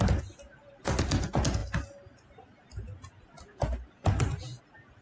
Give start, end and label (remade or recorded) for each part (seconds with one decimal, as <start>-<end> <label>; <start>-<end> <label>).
0.0-5.0 recorded